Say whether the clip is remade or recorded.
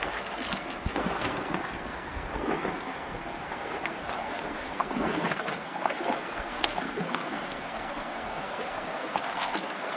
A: remade